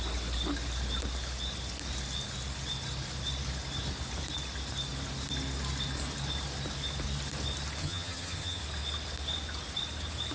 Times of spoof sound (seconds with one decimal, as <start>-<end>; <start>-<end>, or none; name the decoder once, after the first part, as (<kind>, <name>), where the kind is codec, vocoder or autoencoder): 7.8-8.6 (vocoder, HiFi-GAN)